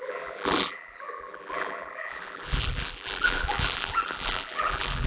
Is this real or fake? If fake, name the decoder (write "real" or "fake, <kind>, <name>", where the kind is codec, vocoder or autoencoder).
fake, vocoder, BigVGAN v2